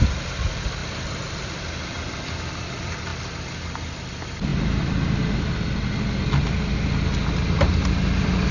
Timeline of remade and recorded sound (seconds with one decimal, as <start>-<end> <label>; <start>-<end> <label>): 0.0-0.8 remade; 0.8-1.3 recorded; 1.3-3.1 remade; 3.1-4.0 recorded; 4.0-4.5 remade; 4.5-8.5 recorded